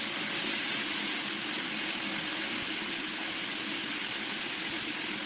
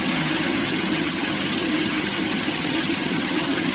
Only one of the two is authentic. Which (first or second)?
first